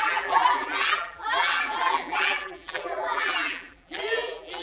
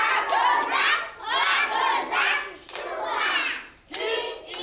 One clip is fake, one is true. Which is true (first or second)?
second